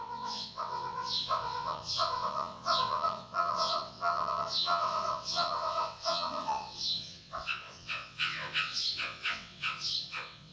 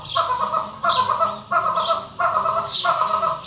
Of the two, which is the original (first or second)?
second